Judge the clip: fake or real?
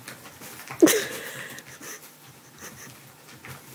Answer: real